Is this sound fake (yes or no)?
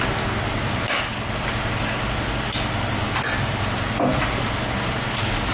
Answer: no